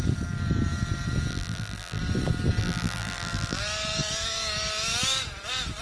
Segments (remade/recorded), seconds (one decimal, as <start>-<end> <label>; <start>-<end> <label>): 0.0-1.3 recorded; 1.3-2.0 remade; 2.0-2.6 recorded; 2.6-3.6 remade; 3.6-5.8 recorded